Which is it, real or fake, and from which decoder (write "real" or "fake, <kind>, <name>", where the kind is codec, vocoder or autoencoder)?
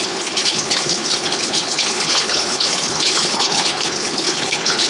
fake, codec, HILCodec